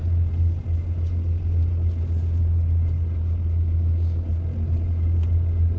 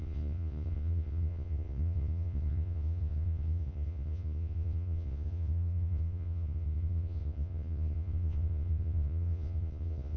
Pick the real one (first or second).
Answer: first